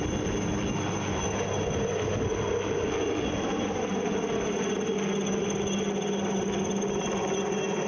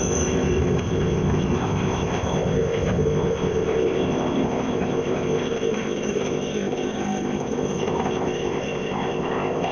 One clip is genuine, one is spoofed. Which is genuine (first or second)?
first